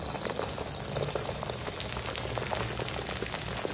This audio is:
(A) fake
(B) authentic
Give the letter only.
B